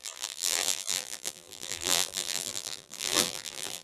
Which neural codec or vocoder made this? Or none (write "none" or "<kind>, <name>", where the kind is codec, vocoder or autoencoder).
vocoder, BigVGAN v2